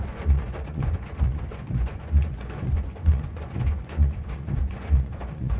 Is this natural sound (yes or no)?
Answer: no